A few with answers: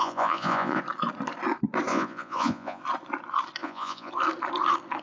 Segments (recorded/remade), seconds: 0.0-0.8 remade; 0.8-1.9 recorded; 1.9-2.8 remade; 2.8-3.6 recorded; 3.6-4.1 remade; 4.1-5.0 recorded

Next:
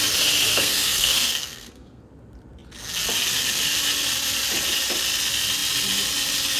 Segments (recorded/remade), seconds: 0.0-0.5 recorded; 0.5-2.0 remade; 2.0-6.6 recorded